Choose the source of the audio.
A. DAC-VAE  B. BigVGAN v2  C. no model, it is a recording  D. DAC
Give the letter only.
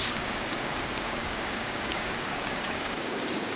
D